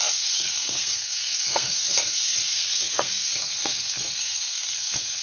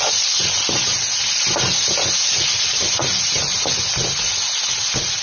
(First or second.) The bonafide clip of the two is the second